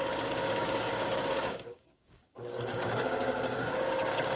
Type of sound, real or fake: fake